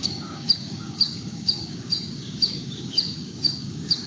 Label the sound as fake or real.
fake